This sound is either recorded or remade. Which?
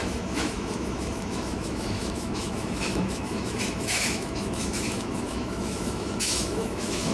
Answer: remade